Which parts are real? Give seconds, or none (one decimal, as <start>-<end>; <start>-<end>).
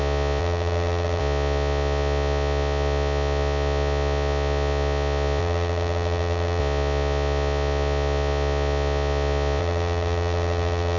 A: 0.0-0.4; 1.2-5.4; 6.6-9.6